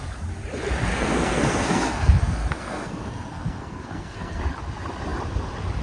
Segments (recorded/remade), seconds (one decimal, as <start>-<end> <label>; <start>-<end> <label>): 0.0-0.9 recorded; 0.9-4.4 remade; 4.4-5.8 recorded